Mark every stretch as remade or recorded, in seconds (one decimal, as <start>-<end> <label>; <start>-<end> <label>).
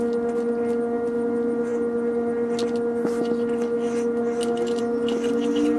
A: 0.0-5.8 recorded